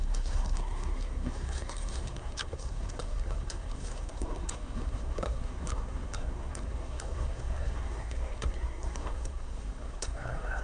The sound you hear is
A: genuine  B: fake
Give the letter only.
B